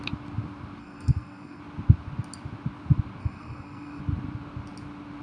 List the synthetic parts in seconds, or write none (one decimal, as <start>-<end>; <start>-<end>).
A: 0.8-1.6; 3.2-4.0